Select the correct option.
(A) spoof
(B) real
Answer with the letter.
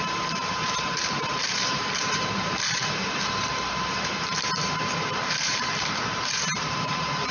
A